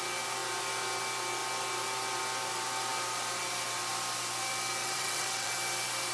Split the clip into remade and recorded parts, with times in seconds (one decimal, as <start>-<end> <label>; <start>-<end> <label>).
0.0-4.8 recorded; 4.8-5.5 remade; 5.5-6.1 recorded